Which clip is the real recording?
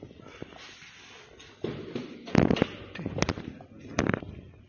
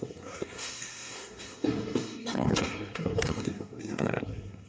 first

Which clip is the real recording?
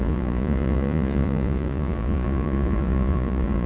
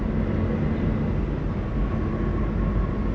second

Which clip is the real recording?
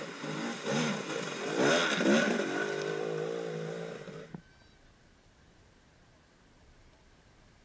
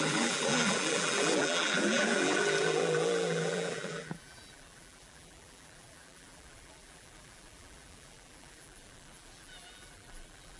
first